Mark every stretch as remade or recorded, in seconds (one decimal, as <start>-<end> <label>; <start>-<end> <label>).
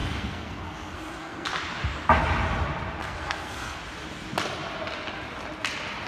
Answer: 0.0-1.5 remade; 1.5-3.0 recorded; 3.0-3.8 remade; 3.8-6.1 recorded